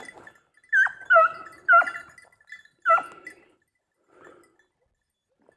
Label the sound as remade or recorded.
recorded